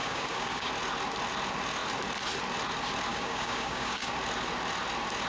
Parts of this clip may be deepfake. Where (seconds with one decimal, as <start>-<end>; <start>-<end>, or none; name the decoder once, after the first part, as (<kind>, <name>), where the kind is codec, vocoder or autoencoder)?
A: 0.0-0.7 (codec, DAC); 3.1-4.1